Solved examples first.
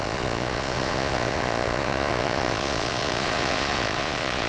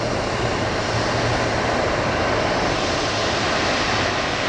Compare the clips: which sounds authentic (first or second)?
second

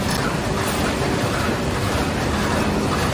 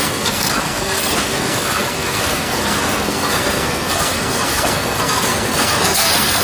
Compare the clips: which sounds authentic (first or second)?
first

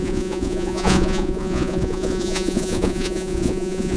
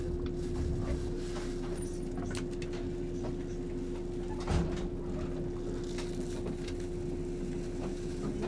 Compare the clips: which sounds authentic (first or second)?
second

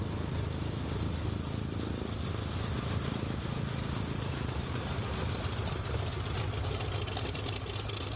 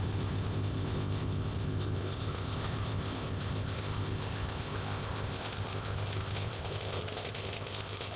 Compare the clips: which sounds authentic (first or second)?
first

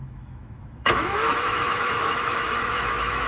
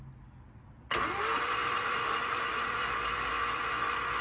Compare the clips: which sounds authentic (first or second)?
second